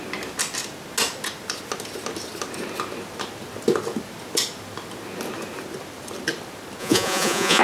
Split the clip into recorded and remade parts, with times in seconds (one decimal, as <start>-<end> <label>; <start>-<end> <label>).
0.0-6.8 recorded; 6.8-7.6 remade